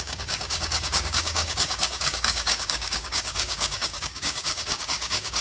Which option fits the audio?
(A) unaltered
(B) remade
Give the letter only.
B